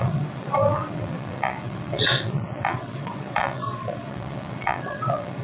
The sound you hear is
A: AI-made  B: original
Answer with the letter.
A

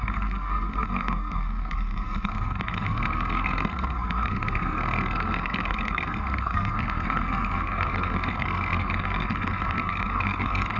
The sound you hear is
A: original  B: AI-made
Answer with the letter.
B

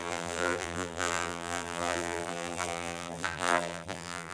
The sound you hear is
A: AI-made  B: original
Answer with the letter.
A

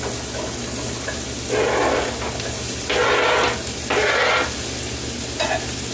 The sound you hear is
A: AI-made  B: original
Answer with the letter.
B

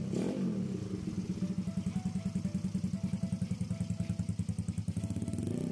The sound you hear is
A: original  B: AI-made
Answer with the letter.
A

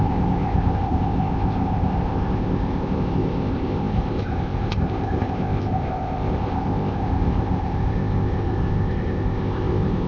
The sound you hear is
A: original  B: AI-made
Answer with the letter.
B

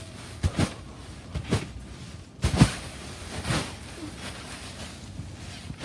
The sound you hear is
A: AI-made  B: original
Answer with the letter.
B